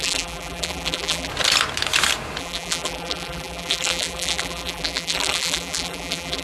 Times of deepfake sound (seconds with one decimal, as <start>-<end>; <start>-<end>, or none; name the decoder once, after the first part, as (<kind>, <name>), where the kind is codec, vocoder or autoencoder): 0.0-1.3 (vocoder, BigVGAN v2); 2.4-6.4